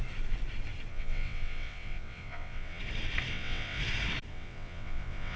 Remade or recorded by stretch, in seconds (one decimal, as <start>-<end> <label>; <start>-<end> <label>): 0.0-0.9 recorded; 0.9-2.8 remade; 2.8-3.3 recorded; 3.3-3.8 remade; 3.8-4.3 recorded; 4.3-5.4 remade